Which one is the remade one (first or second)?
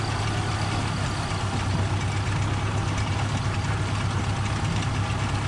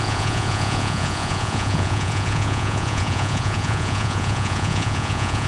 second